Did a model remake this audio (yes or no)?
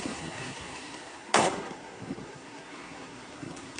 yes